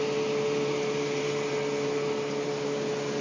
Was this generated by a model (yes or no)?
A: no